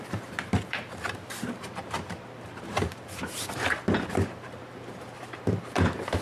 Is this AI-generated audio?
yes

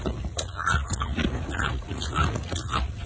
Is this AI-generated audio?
yes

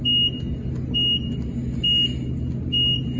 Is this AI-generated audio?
no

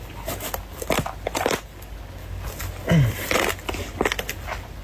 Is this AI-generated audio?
no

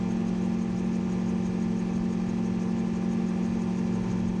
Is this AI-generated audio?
no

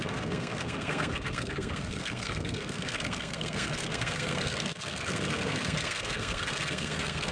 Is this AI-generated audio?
yes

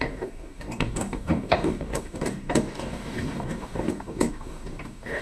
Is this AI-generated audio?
yes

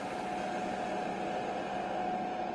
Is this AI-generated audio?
no